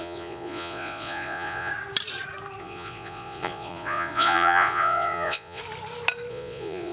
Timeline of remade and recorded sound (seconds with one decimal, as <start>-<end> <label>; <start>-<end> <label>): 0.0-1.7 remade; 1.7-2.6 recorded; 2.6-5.6 remade; 5.6-6.3 recorded; 6.3-6.9 remade